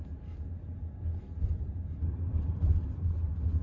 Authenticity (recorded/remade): recorded